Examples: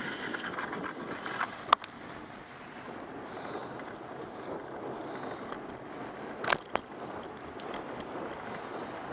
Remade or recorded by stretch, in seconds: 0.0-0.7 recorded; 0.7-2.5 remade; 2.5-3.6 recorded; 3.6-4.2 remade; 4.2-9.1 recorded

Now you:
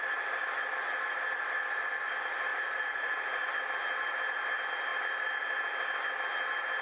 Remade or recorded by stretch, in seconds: 0.0-2.5 recorded; 2.5-3.5 remade; 3.5-6.8 recorded

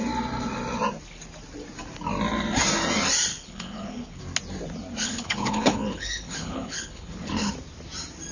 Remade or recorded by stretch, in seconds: 0.0-3.3 recorded; 3.3-4.2 remade; 4.2-5.0 recorded; 5.0-7.5 remade; 7.5-8.3 recorded